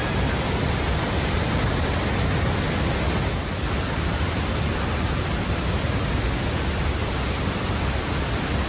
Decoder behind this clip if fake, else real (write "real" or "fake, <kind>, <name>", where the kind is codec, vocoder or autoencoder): real